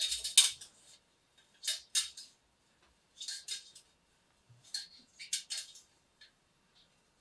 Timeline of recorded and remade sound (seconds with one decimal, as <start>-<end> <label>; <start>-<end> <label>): 0.0-7.2 recorded